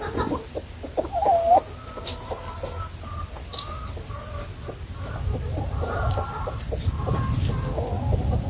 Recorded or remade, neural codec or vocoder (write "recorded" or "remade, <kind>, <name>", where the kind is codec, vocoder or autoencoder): recorded